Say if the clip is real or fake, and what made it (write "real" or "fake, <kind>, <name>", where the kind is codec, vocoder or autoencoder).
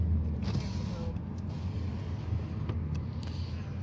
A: real